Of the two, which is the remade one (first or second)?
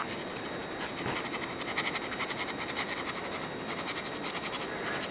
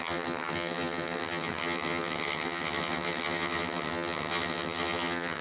second